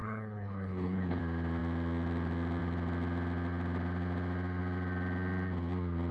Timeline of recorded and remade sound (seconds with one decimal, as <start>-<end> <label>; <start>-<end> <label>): 0.0-1.2 remade; 1.2-6.1 recorded